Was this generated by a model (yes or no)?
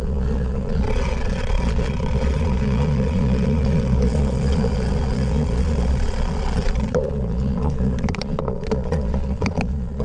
yes